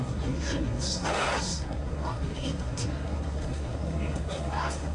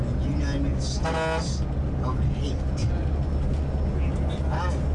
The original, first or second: second